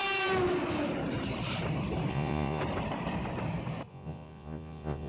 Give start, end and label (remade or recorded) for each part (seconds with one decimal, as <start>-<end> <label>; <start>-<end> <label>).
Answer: 0.0-2.1 recorded; 2.1-2.6 remade; 2.6-3.9 recorded; 3.9-5.1 remade

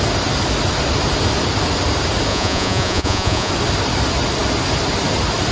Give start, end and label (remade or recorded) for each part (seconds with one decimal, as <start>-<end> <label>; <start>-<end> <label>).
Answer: 0.0-2.3 recorded; 2.3-3.5 remade; 3.5-5.5 recorded

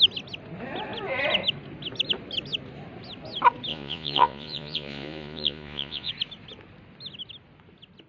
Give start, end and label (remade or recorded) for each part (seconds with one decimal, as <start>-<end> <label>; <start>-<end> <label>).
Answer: 0.0-3.7 recorded; 3.7-6.1 remade; 6.1-8.1 recorded

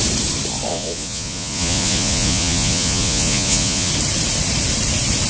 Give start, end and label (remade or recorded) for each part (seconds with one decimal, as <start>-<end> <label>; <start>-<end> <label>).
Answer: 0.0-0.7 recorded; 0.7-3.9 remade; 3.9-5.3 recorded

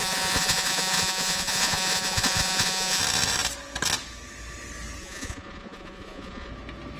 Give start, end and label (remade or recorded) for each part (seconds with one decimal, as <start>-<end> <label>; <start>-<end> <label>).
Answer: 0.0-3.0 remade; 3.0-5.0 recorded; 5.0-6.5 remade; 6.5-7.0 recorded

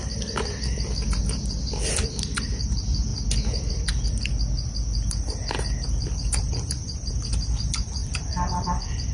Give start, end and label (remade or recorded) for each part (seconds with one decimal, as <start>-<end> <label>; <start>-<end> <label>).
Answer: 0.0-9.1 recorded